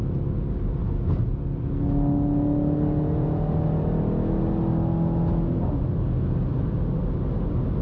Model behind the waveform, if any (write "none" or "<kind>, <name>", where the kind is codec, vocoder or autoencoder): none